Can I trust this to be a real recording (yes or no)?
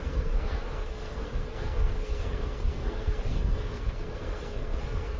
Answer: no